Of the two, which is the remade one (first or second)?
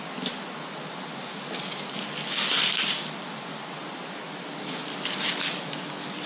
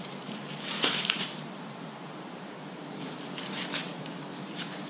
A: second